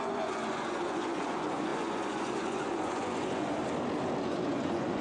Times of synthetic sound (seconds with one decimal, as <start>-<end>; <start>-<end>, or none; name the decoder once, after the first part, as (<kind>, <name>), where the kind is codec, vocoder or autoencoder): 0.0-3.6 (vocoder, Vocos); 4.2-5.0